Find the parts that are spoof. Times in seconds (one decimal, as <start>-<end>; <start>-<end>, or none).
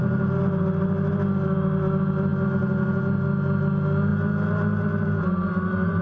none